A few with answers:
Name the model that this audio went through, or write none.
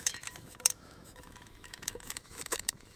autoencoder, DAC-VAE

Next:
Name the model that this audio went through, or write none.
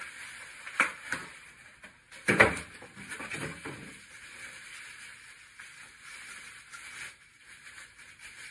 none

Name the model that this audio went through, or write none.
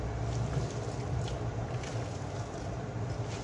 none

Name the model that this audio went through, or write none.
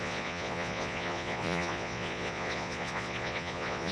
vocoder, Vocos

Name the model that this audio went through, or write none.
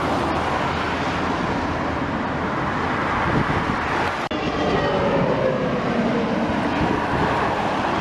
none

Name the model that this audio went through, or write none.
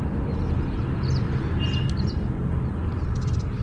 none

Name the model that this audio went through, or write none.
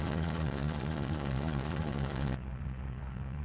vocoder, Vocos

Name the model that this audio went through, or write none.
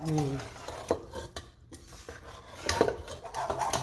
none